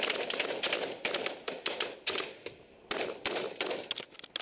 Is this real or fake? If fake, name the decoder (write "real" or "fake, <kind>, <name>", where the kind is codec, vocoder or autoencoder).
real